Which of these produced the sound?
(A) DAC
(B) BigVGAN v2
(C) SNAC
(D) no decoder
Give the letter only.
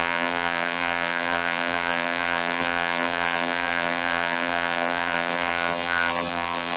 B